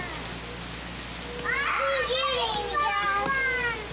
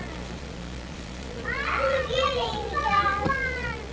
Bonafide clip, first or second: first